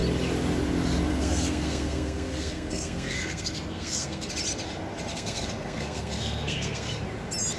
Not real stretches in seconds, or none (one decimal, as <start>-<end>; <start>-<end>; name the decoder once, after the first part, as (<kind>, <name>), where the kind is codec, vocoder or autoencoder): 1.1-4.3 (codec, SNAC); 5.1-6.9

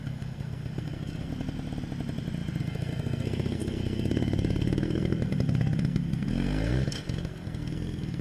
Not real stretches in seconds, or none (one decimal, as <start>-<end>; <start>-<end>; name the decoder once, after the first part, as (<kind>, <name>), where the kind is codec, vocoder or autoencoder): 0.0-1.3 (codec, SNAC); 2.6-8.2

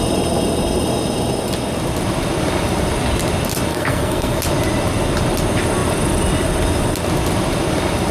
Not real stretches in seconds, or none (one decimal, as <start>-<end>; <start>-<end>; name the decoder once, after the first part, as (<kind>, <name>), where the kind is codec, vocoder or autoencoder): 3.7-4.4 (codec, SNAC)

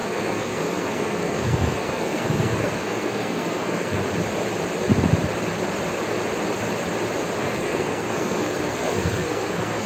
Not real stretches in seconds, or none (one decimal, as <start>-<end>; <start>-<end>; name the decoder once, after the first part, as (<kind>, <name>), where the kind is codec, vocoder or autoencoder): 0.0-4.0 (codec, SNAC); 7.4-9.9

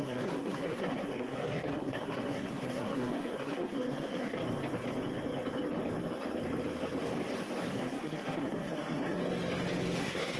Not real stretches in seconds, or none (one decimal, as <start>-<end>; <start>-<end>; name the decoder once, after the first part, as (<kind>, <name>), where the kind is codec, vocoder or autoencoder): 0.0-4.4 (codec, SNAC); 7.7-9.2; 10.0-10.4

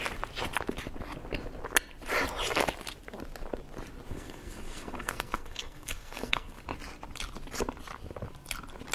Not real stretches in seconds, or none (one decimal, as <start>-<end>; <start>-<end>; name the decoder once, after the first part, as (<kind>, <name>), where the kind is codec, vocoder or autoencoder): 4.1-6.6 (codec, SNAC)

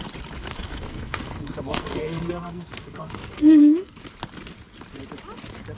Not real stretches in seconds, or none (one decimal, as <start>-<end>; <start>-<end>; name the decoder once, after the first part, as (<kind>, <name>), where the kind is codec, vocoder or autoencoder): 0.5-4.0 (codec, SNAC)

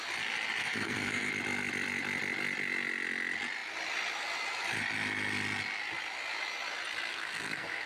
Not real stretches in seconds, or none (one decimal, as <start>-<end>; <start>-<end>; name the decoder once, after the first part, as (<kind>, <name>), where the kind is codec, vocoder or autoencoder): 0.6-1.3 (codec, SNAC); 7.1-7.9